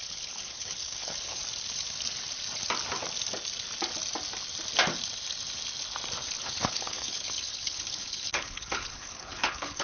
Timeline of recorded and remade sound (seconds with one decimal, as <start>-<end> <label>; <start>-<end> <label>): 0.0-1.4 remade; 1.4-6.4 recorded; 6.4-9.8 remade